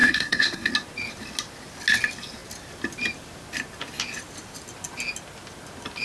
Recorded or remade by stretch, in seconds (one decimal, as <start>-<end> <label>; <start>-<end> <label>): 0.0-0.7 remade; 0.7-6.0 recorded